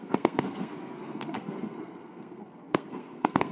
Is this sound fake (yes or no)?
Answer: yes